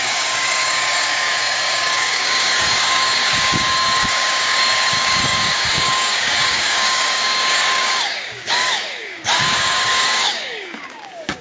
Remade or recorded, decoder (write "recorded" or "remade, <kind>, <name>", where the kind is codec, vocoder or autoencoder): remade, codec, DAC